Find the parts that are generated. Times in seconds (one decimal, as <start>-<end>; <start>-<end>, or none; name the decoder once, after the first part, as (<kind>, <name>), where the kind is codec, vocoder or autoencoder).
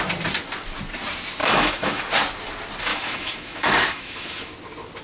1.4-2.0 (autoencoder, DAC-VAE); 2.9-4.5